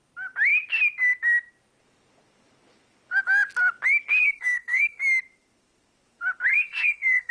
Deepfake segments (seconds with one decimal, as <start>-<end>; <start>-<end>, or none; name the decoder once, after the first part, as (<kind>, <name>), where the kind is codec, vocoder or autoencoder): 4.2-5.0 (codec, SNAC); 6.5-7.3